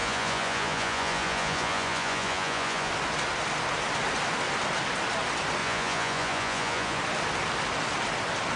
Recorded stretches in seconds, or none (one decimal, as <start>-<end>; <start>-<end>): 2.9-5.6; 7.0-8.6

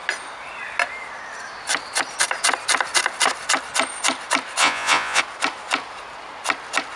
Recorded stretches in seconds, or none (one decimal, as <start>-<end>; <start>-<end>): 0.0-4.6; 5.2-7.0

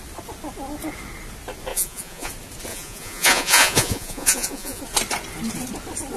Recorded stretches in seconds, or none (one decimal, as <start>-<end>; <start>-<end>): 0.0-1.7; 2.3-2.7; 4.8-6.2